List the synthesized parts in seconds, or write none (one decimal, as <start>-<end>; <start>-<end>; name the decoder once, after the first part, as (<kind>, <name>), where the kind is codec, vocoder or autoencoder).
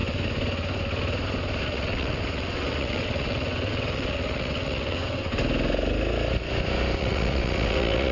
1.6-5.3 (vocoder, WaveNeXt); 7.0-8.1